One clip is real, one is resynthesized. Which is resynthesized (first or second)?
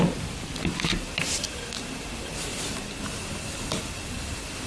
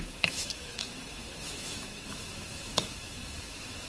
second